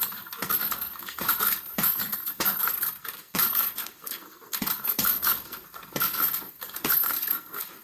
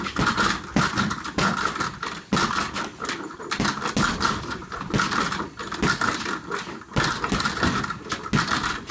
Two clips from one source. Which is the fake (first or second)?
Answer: first